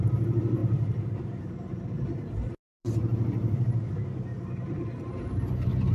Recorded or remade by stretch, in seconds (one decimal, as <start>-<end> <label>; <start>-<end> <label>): 0.0-5.9 remade